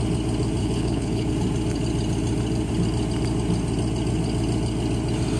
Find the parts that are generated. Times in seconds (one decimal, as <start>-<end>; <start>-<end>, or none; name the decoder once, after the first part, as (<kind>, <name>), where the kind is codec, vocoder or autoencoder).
0.6-1.3 (codec, HILCodec)